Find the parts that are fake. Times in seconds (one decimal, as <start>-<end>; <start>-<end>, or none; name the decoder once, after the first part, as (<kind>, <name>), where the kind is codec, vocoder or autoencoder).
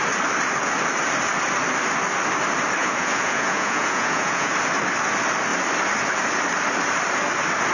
2.8-4.5 (vocoder, Vocos)